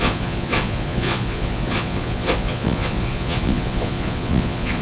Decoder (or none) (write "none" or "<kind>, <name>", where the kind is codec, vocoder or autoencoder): vocoder, Vocos